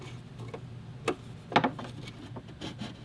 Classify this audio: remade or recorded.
recorded